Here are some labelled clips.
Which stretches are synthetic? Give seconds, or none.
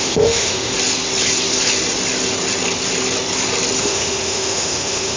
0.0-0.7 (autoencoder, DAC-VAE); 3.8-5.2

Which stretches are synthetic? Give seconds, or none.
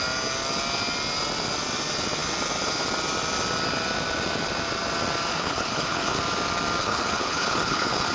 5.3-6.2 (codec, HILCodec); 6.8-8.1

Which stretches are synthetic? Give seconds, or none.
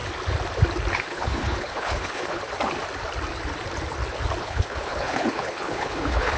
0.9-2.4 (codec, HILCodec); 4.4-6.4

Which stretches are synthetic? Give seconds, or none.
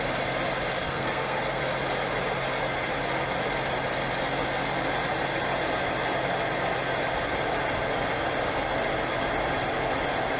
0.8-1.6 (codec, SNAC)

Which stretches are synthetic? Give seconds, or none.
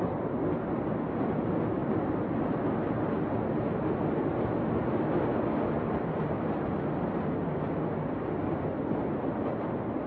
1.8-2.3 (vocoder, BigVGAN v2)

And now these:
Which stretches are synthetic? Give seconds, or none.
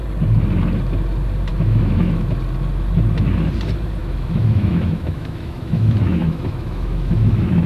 1.5-2.3 (autoencoder, DAC-VAE); 4.0-7.7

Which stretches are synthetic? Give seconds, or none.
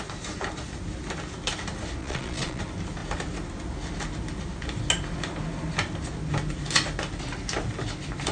2.0-2.6 (vocoder, Vocos)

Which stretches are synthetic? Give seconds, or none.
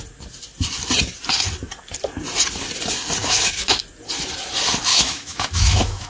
3.2-3.8 (autoencoder, DAC-VAE); 4.9-6.1